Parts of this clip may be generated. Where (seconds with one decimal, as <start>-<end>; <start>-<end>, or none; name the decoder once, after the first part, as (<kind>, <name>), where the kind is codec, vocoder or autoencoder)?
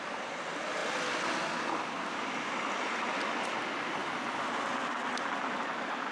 none